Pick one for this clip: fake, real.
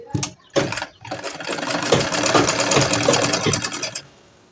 real